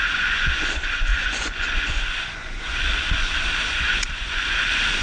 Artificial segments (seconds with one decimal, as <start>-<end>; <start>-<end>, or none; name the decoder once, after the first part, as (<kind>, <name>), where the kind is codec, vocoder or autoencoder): 0.0-5.0 (vocoder, Vocos)